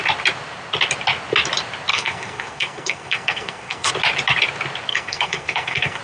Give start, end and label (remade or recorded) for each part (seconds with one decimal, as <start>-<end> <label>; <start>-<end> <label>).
0.0-1.9 recorded; 1.9-3.9 remade; 3.9-4.9 recorded; 4.9-6.0 remade